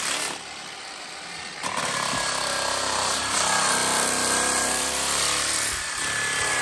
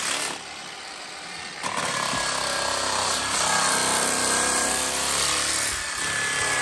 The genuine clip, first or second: second